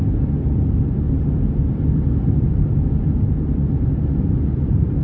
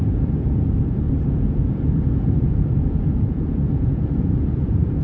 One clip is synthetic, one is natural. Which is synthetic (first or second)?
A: second